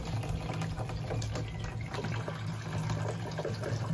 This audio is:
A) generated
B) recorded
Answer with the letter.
B